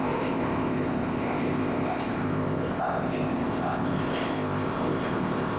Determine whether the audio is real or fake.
fake